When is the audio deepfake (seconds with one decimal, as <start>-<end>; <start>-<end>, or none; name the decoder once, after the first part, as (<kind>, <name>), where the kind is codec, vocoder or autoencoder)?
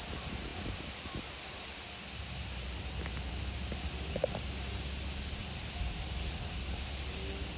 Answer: none